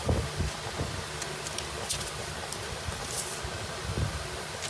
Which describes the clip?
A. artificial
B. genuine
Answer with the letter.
B